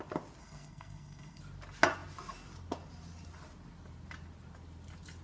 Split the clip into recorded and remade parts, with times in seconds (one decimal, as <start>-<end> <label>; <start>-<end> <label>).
0.0-0.4 recorded; 0.4-1.4 remade; 1.4-5.2 recorded